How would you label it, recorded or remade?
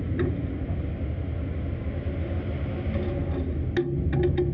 recorded